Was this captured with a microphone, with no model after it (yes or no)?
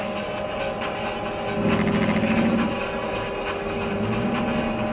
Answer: yes